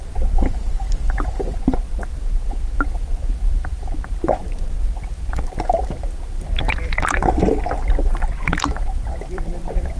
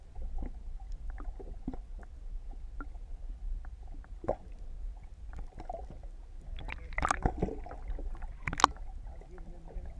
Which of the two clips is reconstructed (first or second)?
first